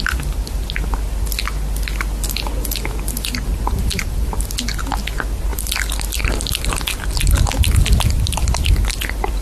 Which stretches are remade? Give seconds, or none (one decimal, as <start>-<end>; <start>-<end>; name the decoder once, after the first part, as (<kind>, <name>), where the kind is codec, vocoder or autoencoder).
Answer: 3.5-4.5 (vocoder, BigVGAN v2)